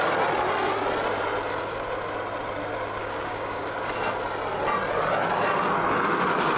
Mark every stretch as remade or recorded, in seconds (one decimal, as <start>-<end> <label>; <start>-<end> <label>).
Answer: 0.0-3.0 recorded; 3.0-3.9 remade; 3.9-6.6 recorded